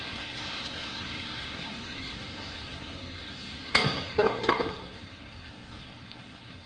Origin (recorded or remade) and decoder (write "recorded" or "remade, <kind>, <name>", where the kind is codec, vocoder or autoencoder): remade, codec, SNAC